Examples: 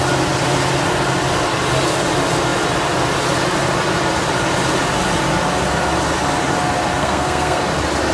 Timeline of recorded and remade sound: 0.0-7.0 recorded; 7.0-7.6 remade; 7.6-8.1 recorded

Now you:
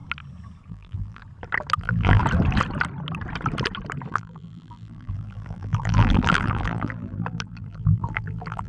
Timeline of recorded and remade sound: 0.0-0.7 recorded; 0.7-1.2 remade; 1.2-1.8 recorded; 1.8-2.2 remade; 2.2-4.1 recorded; 4.1-8.7 remade

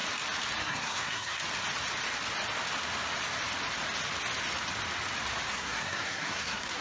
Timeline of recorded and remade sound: 0.0-0.6 recorded; 0.6-1.4 remade; 1.4-5.5 recorded; 5.5-6.8 remade

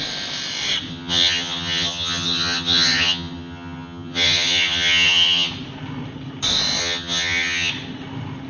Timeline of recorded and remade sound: 0.0-0.9 recorded; 0.9-5.5 remade; 5.5-6.8 recorded; 6.8-7.7 remade; 7.7-8.5 recorded

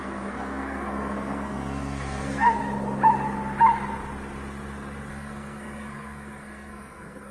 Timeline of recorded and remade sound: 0.0-2.6 remade; 2.6-5.1 recorded; 5.1-7.3 remade